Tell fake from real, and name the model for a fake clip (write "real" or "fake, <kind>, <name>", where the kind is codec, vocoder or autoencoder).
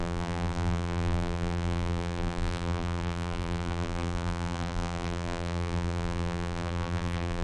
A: fake, vocoder, BigVGAN v2